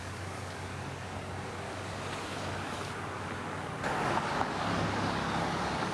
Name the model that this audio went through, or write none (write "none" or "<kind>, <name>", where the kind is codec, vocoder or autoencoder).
codec, DAC